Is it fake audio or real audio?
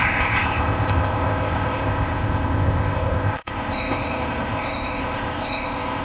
fake